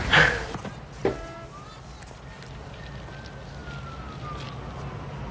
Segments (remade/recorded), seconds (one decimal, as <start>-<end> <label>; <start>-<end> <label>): 0.0-5.3 recorded